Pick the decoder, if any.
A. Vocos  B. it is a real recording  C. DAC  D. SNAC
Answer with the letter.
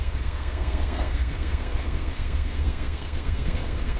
D